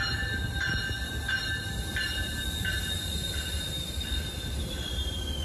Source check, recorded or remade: recorded